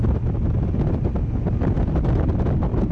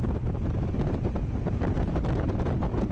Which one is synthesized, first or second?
second